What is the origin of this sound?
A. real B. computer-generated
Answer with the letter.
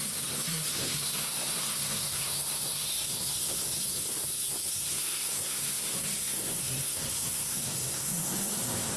B